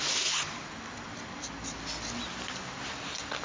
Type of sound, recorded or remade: recorded